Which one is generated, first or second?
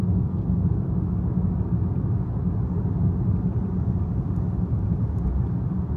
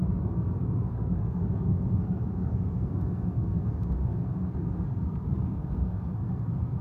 second